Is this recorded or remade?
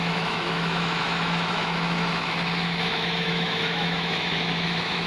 remade